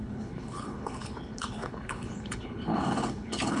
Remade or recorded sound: remade